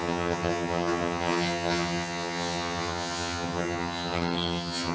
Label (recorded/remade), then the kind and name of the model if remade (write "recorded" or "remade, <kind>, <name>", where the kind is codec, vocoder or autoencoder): remade, vocoder, HiFi-GAN